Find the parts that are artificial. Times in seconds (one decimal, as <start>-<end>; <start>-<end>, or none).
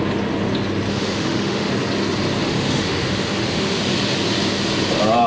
0.9-1.7; 2.4-3.8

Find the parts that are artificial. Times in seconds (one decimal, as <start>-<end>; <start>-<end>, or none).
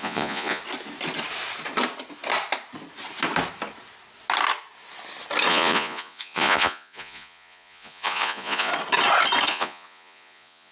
0.0-0.6; 5.5-8.7; 9.5-10.7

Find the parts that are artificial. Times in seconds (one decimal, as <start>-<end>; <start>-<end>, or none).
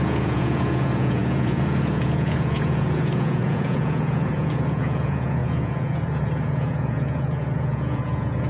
0.0-8.5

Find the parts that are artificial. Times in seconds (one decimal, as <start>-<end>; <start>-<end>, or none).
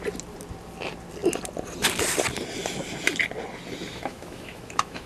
3.9-5.1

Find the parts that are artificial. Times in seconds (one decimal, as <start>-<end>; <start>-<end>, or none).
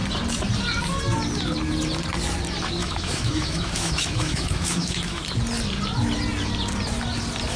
2.8-5.2